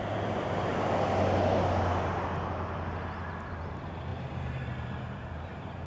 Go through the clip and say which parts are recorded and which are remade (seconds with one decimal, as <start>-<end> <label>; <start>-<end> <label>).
0.0-0.7 remade; 0.7-3.6 recorded; 3.6-5.9 remade